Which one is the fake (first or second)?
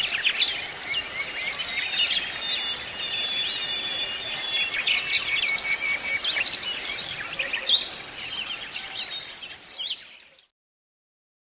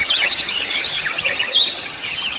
second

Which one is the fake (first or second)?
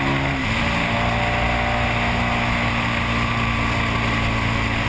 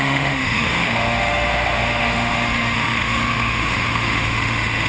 second